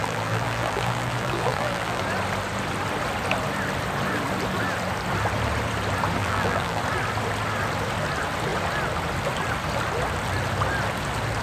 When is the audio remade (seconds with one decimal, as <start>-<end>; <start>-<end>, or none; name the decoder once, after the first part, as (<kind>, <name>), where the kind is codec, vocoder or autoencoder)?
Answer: 0.0-2.0 (vocoder, BigVGAN v2); 6.2-6.8